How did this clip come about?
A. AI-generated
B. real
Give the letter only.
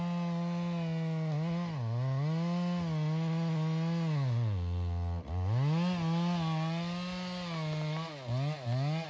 B